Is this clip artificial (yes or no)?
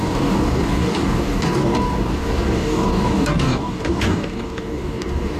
yes